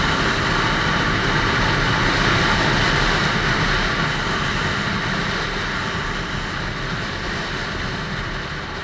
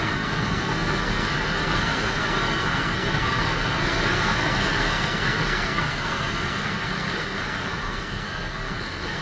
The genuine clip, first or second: first